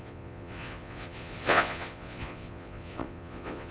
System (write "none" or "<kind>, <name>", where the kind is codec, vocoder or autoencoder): vocoder, Vocos